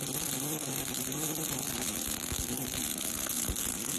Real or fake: real